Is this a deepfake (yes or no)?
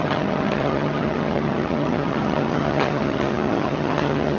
yes